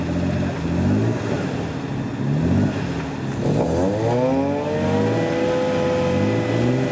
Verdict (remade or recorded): recorded